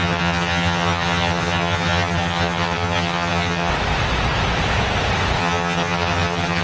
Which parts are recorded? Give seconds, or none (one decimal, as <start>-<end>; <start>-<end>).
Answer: 3.7-5.4